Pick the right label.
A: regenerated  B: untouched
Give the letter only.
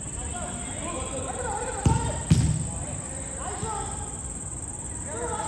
B